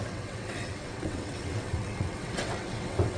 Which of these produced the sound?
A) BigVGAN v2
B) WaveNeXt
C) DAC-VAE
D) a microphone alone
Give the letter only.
B